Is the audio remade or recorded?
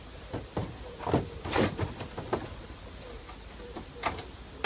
recorded